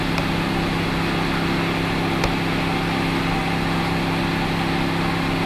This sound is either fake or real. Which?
real